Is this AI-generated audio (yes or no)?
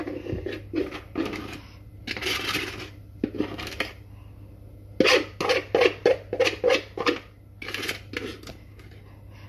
no